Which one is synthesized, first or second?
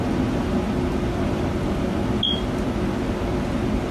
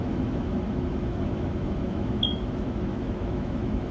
second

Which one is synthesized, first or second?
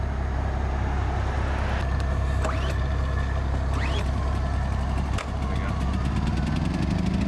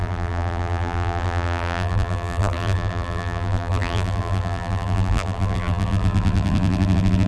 second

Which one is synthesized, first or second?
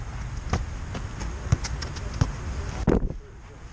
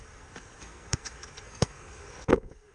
second